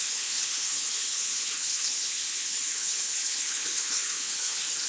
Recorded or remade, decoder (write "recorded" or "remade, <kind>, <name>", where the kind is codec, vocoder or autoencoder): remade, codec, HILCodec